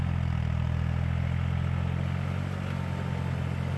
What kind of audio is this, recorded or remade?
recorded